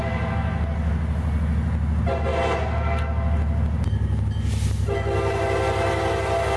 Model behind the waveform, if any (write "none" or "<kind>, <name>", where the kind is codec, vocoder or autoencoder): none